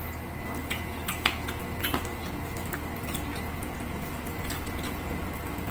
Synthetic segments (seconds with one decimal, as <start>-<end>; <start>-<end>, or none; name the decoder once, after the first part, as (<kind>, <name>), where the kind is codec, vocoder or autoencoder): 0.6-1.6 (vocoder, Vocos); 3.3-5.2